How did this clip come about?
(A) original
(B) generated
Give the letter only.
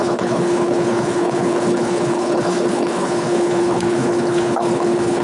B